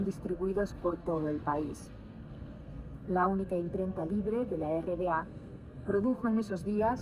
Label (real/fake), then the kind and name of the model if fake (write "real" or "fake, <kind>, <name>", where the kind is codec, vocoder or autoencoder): fake, codec, SNAC